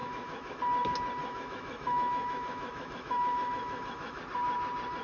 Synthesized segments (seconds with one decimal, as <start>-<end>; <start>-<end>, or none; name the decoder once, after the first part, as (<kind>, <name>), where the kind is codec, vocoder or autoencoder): 0.0-0.6 (autoencoder, DAC-VAE); 1.2-4.2